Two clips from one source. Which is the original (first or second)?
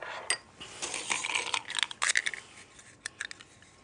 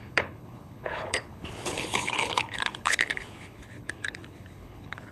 first